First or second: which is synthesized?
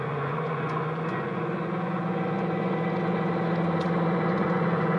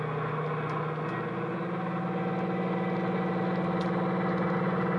first